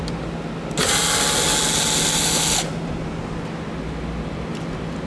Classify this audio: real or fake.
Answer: real